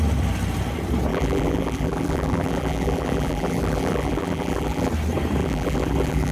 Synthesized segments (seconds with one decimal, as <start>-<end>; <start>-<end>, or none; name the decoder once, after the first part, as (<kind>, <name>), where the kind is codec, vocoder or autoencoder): 1.1-4.9 (vocoder, BigVGAN v2); 5.4-6.3

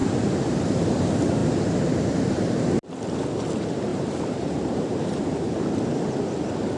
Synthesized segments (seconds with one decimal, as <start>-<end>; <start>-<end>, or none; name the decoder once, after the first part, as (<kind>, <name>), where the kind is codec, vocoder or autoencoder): 0.0-1.0 (vocoder, BigVGAN v2); 1.4-2.8; 3.9-5.5